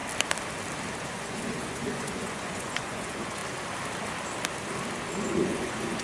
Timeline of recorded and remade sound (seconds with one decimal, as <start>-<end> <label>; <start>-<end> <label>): 0.0-1.0 recorded; 1.0-3.4 remade; 3.4-5.1 recorded; 5.1-6.0 remade